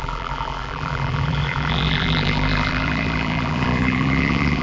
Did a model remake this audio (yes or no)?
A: yes